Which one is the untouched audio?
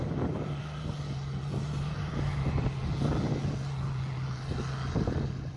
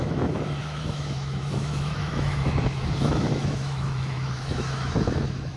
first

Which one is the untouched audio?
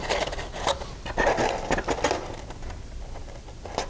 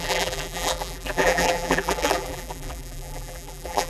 first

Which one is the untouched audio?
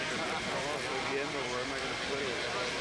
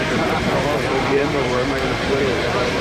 first